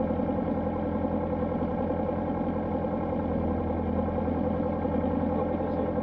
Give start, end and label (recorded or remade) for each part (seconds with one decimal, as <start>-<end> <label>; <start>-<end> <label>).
0.0-6.0 recorded